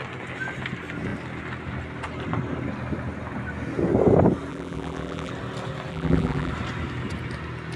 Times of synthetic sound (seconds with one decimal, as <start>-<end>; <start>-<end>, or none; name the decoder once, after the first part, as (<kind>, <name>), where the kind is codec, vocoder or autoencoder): 4.5-5.3 (vocoder, BigVGAN v2); 5.9-6.5